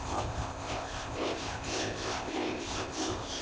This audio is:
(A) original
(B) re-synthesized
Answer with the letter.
B